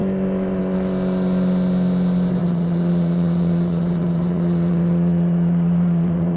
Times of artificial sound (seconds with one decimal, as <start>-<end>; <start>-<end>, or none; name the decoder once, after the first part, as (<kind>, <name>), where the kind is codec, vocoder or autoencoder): 2.4-6.4 (vocoder, Vocos)